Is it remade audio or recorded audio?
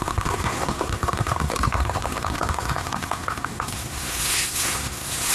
remade